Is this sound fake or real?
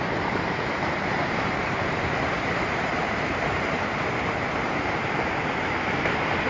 fake